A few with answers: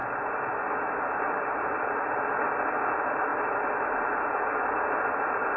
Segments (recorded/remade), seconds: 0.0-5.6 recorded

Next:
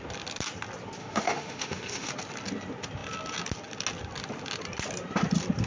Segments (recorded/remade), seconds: 0.0-1.0 recorded; 1.0-2.1 remade; 2.1-5.7 recorded

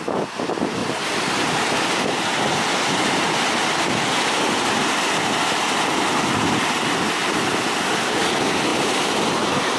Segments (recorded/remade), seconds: 0.0-0.8 recorded; 0.8-6.0 remade; 6.0-7.2 recorded; 7.2-8.2 remade; 8.2-8.7 recorded; 8.7-9.3 remade; 9.3-9.8 recorded

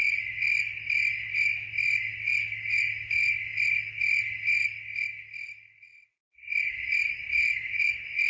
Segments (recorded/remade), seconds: 0.0-8.3 recorded

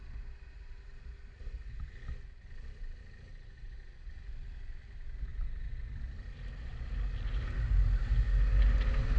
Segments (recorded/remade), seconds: 0.0-3.3 recorded; 3.3-4.1 remade; 4.1-9.2 recorded

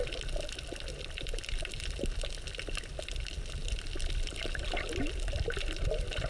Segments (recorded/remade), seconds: 0.0-6.3 recorded

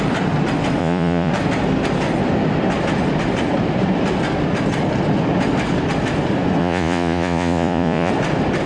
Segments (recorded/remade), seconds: 0.0-0.8 recorded; 0.8-1.3 remade; 1.3-6.6 recorded; 6.6-8.1 remade; 8.1-8.7 recorded